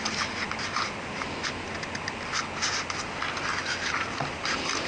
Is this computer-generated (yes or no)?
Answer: no